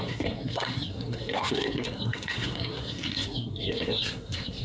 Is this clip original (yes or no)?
no